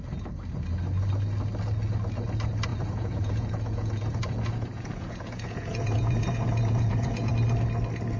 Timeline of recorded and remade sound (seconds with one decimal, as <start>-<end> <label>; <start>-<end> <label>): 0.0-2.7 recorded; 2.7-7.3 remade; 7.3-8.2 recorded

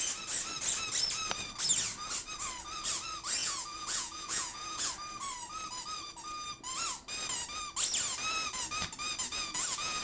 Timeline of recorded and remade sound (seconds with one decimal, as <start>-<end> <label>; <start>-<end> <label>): 0.0-3.4 recorded; 3.4-4.9 remade; 4.9-9.3 recorded; 9.3-10.0 remade

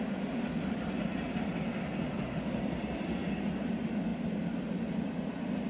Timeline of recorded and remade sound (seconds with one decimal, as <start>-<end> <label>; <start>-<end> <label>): 0.0-5.7 recorded